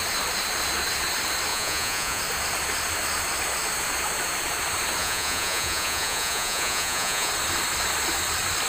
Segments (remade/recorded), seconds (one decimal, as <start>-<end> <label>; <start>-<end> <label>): 0.0-1.5 recorded; 1.5-2.2 remade; 2.2-5.0 recorded; 5.0-7.3 remade; 7.3-8.7 recorded

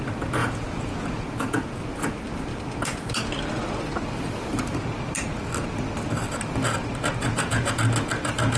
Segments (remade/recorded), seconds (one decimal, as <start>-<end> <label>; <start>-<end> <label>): 0.0-0.4 recorded; 0.4-1.8 remade; 1.8-7.2 recorded; 7.2-7.8 remade; 7.8-8.6 recorded

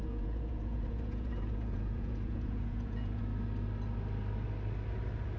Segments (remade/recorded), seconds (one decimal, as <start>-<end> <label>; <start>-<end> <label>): 0.0-3.2 remade; 3.2-5.4 recorded

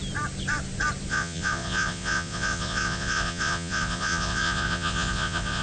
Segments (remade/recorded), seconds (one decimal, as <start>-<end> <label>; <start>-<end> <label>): 0.0-1.1 recorded; 1.1-5.6 remade

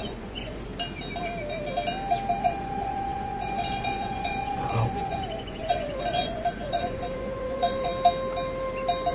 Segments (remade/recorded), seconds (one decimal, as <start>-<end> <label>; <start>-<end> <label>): 0.0-0.7 remade; 0.7-2.4 recorded; 2.4-7.9 remade; 7.9-9.1 recorded

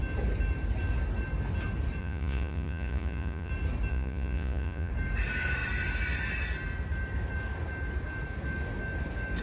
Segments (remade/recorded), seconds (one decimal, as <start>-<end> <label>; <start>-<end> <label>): 0.0-2.0 recorded; 2.0-3.5 remade; 3.5-3.9 recorded; 3.9-4.9 remade; 4.9-9.4 recorded

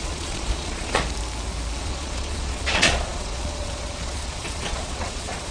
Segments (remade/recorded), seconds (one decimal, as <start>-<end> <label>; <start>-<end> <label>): 0.0-1.0 remade; 1.0-1.8 recorded; 1.8-5.5 remade